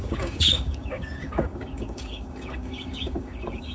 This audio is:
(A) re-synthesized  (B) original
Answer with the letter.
A